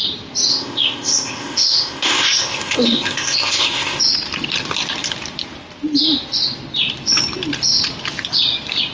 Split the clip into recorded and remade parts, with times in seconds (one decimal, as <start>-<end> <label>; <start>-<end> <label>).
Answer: 0.0-0.5 recorded; 0.5-4.0 remade; 4.0-8.9 recorded